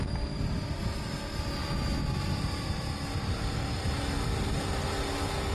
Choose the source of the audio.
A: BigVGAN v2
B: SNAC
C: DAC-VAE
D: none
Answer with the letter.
D